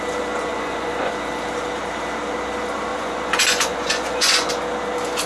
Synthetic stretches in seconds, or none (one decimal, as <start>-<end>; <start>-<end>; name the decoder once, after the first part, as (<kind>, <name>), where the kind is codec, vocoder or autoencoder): 0.5-1.1 (vocoder, Vocos); 2.9-4.5